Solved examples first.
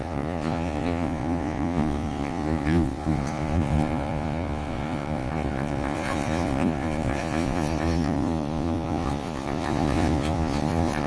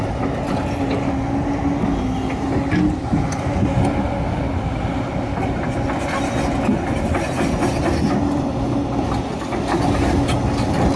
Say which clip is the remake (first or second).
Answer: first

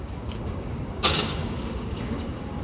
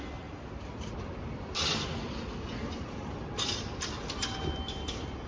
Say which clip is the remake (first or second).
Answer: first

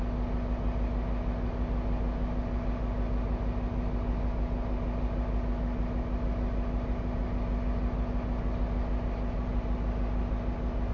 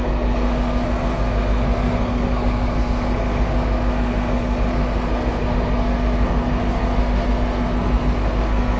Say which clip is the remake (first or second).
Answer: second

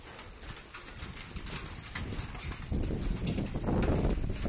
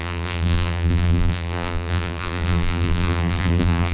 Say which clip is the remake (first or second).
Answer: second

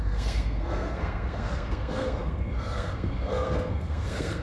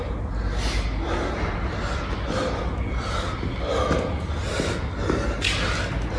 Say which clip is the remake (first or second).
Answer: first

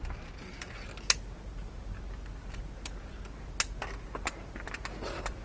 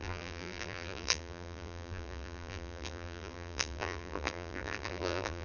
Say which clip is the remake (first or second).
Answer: second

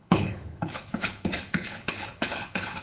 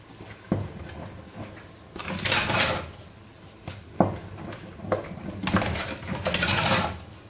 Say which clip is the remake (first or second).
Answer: first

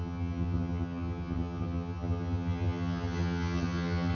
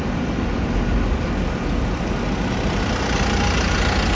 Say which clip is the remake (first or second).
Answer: first